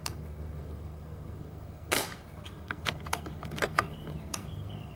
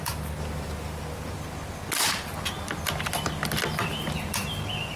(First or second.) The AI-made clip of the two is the first